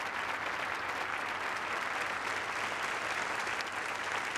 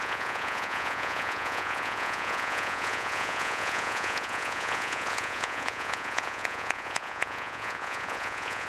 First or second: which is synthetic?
second